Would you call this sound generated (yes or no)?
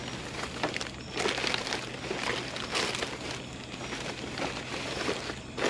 no